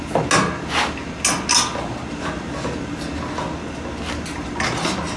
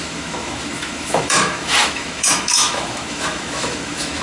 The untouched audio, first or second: first